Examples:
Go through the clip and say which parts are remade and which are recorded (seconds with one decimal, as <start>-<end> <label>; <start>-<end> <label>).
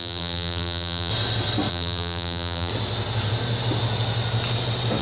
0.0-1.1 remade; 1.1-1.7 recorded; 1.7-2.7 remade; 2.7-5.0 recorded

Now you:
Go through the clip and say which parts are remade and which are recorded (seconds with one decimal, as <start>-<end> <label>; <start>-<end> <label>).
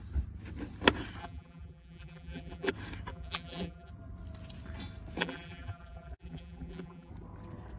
0.0-1.2 recorded; 1.2-2.7 remade; 2.7-3.1 recorded; 3.1-3.9 remade; 3.9-5.2 recorded; 5.2-7.1 remade; 7.1-7.8 recorded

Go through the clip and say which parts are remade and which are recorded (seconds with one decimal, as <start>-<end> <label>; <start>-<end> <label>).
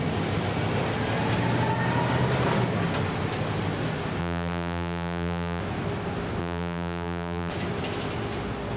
0.0-4.2 recorded; 4.2-5.6 remade; 5.6-6.4 recorded; 6.4-7.5 remade; 7.5-8.8 recorded